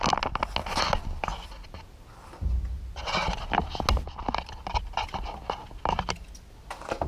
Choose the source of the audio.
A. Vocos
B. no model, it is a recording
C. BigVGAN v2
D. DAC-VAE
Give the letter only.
B